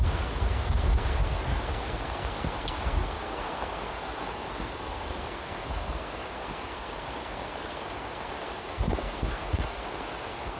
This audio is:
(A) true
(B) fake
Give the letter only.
B